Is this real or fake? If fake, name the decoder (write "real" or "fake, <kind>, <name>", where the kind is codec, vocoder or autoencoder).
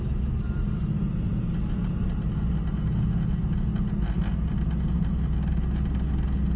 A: real